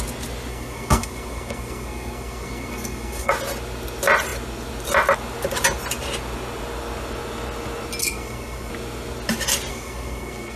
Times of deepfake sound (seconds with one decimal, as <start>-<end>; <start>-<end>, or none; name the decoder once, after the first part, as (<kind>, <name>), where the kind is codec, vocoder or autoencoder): 0.5-3.3 (codec, SNAC); 8.0-8.7; 9.7-10.6